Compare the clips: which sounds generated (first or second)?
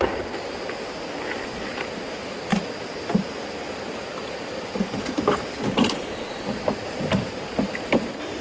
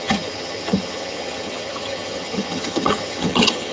second